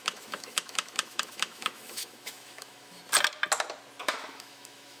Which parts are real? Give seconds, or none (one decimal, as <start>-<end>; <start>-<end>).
3.0-4.0